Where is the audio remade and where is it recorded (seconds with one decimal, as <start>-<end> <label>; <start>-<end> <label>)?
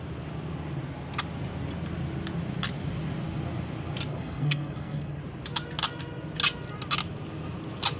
0.0-4.1 recorded; 4.1-5.2 remade; 5.2-8.0 recorded